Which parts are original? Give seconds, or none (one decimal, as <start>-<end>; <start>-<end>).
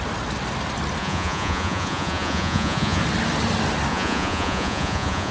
0.0-1.0; 3.0-3.9